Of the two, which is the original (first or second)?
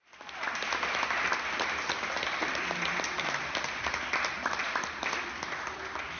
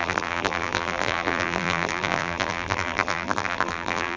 first